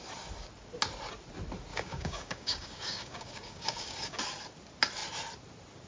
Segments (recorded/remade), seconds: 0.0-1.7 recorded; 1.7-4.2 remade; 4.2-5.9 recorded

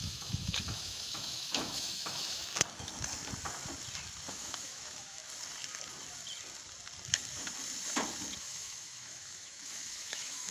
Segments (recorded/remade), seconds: 0.0-2.5 remade; 2.5-4.3 recorded; 4.3-5.2 remade; 5.2-8.4 recorded; 8.4-10.5 remade

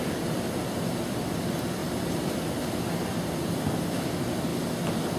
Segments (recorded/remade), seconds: 0.0-5.2 remade

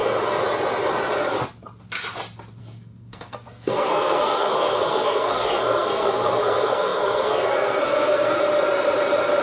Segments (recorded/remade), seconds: 0.0-2.6 recorded; 2.6-8.4 remade; 8.4-9.4 recorded

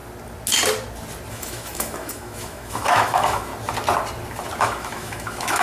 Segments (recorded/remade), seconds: 0.0-1.3 recorded; 1.3-3.5 remade; 3.5-4.6 recorded; 4.6-5.6 remade